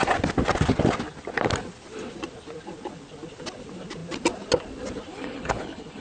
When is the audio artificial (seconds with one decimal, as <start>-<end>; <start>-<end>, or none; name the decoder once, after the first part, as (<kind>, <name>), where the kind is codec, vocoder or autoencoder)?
5.1-6.0 (codec, HILCodec)